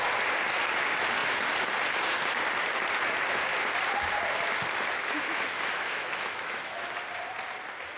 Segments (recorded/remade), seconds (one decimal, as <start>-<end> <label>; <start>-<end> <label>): 0.0-5.0 recorded; 5.0-6.9 remade; 6.9-8.0 recorded